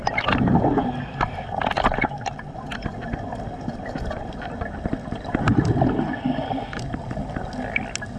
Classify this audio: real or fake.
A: real